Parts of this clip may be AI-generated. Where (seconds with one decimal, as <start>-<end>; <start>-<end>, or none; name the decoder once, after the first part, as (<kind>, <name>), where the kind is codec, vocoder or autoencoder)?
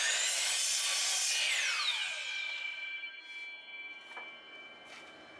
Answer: none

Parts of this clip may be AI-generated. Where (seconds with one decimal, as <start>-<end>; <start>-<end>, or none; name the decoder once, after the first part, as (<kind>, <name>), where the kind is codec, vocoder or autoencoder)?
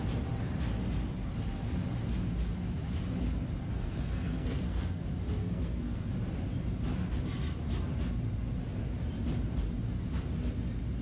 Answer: 3.7-5.0 (codec, SNAC); 5.4-6.1